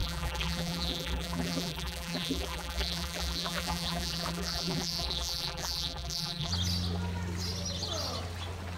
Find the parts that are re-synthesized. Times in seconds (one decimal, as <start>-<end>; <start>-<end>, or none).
0.0-6.5